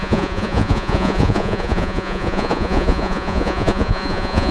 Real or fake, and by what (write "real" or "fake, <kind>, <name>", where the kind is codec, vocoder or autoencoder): fake, vocoder, Vocos